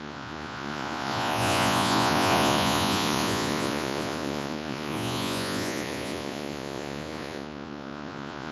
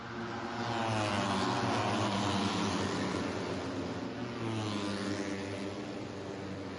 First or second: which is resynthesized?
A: first